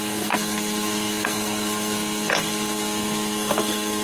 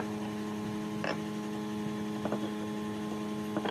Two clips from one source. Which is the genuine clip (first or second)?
second